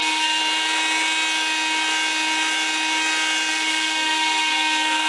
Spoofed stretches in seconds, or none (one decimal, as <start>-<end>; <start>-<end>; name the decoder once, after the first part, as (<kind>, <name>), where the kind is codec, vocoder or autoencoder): 0.0-0.4 (codec, SNAC); 3.5-5.1